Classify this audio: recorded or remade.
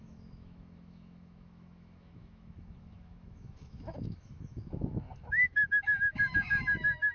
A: remade